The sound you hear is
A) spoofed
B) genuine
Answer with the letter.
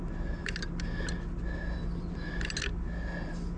B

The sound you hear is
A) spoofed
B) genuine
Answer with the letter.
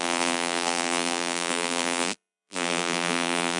A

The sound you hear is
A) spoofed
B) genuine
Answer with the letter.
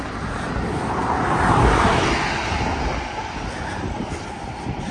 B